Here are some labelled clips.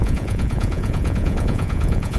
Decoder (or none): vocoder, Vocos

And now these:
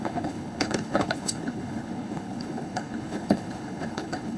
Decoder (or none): codec, HILCodec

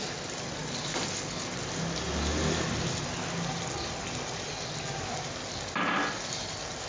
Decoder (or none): none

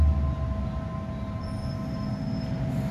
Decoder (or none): none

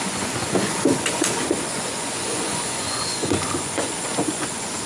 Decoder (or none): vocoder, Vocos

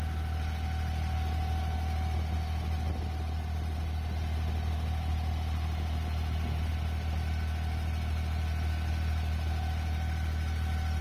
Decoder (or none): none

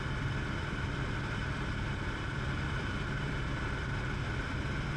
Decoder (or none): vocoder, BigVGAN v2